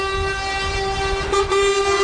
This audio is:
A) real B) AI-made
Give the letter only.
A